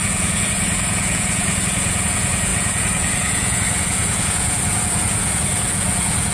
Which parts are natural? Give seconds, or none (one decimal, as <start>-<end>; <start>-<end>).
none